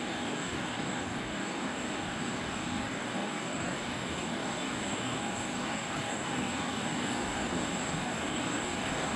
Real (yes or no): no